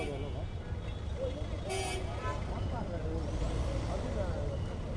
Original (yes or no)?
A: yes